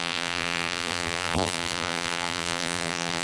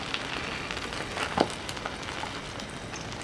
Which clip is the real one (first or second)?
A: second